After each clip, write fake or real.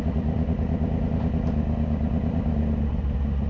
real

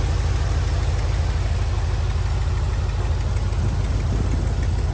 real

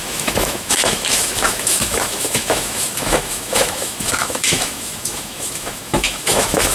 fake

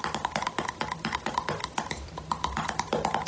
fake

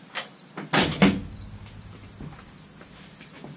real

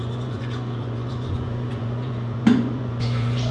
fake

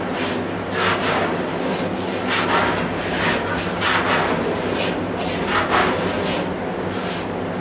real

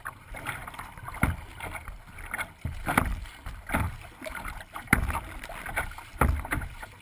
fake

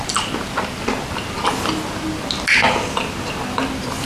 real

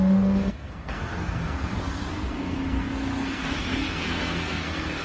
fake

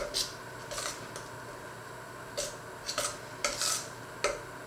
real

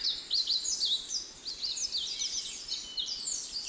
real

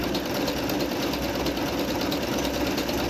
real